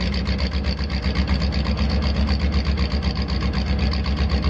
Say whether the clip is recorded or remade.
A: recorded